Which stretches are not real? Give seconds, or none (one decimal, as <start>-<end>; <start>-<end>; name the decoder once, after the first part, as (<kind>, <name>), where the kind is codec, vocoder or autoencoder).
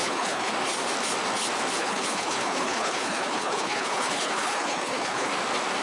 0.0-0.5 (codec, HILCodec); 1.8-5.3